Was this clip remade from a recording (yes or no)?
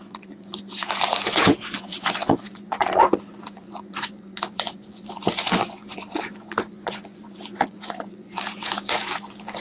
yes